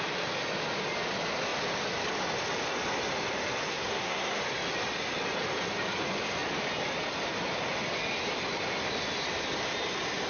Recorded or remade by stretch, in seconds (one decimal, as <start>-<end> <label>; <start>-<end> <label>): 0.0-3.7 recorded; 3.7-4.4 remade; 4.4-10.3 recorded